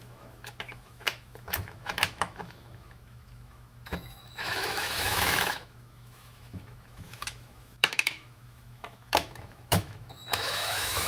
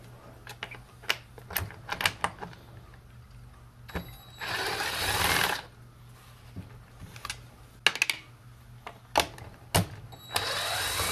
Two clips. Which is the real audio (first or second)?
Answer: second